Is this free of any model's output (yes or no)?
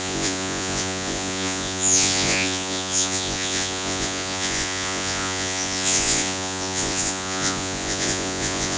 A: no